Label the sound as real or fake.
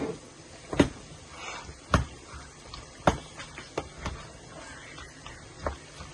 real